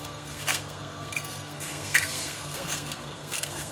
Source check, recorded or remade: remade